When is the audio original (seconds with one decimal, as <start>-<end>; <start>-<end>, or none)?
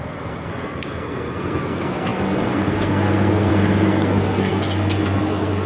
none